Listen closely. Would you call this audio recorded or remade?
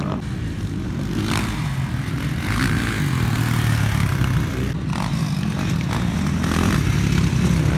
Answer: recorded